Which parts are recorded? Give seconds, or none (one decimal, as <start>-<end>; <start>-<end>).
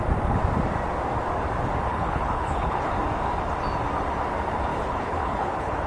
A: 0.0-1.9; 2.9-4.7